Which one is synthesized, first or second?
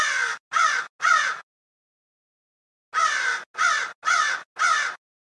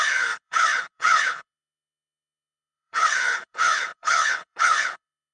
second